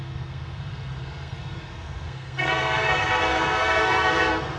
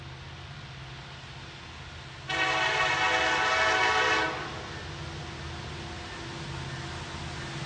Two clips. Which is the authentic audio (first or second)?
second